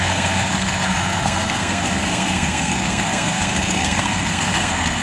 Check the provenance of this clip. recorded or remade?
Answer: remade